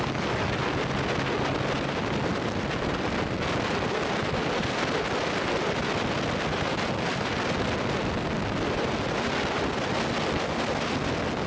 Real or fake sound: real